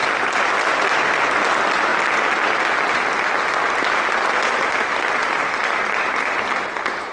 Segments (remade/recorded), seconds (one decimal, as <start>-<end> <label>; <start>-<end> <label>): 0.0-7.1 recorded